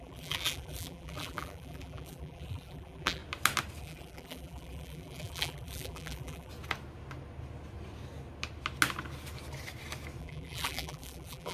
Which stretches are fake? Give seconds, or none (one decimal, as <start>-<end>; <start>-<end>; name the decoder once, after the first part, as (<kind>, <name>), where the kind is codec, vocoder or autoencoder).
0.0-3.2 (vocoder, BigVGAN v2); 3.8-6.5; 10.2-11.5